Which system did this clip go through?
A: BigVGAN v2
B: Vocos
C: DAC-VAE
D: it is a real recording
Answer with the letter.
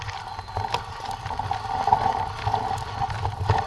D